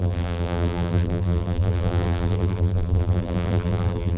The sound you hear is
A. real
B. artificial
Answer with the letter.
B